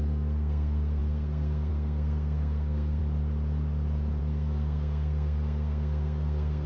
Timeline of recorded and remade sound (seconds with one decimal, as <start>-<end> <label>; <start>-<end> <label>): 0.0-3.0 remade; 3.0-4.2 recorded; 4.2-6.7 remade